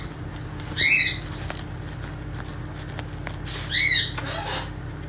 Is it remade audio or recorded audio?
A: recorded